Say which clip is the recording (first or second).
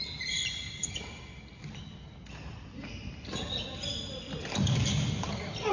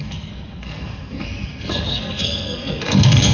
first